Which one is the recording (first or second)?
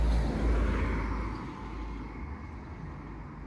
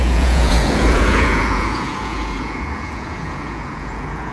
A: first